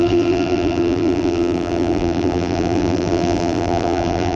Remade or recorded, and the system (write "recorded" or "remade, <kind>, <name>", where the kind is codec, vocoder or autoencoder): remade, vocoder, BigVGAN v2